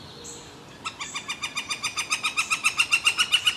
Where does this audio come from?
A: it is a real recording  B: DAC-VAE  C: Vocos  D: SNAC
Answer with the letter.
A